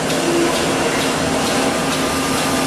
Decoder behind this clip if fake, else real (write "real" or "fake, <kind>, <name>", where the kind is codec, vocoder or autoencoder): real